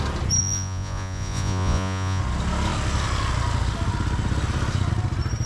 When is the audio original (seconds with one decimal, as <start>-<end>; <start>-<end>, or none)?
0.0-0.4; 2.2-5.5

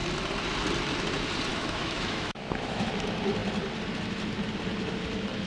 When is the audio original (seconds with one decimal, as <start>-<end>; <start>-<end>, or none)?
0.0-1.5; 2.9-5.5